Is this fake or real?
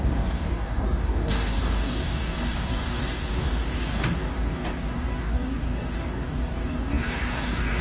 fake